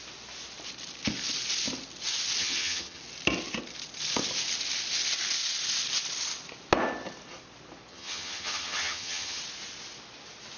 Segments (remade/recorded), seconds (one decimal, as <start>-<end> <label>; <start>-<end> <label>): 0.0-2.4 recorded; 2.4-3.0 remade; 3.0-7.9 recorded; 7.9-9.4 remade; 9.4-10.6 recorded